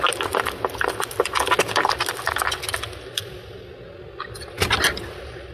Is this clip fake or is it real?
real